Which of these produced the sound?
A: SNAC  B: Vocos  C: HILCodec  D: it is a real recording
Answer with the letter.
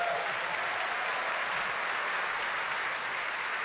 D